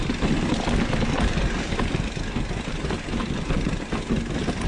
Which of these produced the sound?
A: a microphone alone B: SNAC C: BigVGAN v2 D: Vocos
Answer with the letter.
A